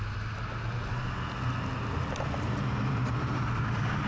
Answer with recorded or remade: recorded